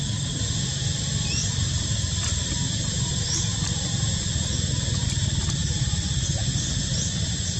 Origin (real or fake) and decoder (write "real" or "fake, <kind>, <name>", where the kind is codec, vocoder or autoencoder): real